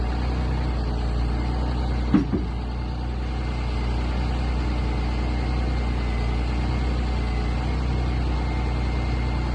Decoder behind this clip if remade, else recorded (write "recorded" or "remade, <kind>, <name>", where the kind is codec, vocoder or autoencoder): recorded